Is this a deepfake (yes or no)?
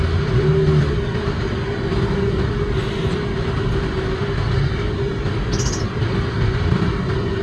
no